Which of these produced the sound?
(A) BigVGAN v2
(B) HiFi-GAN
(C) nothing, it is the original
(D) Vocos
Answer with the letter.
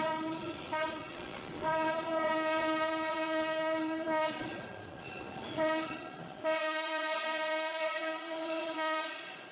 D